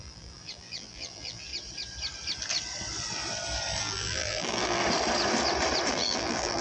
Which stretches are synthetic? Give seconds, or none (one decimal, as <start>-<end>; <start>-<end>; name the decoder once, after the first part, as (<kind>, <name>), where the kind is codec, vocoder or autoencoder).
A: 0.0-1.5 (vocoder, BigVGAN v2); 3.8-4.8; 5.9-6.6